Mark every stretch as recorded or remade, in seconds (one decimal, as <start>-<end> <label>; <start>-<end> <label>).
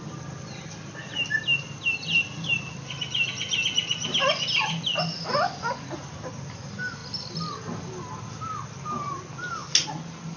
0.0-10.4 recorded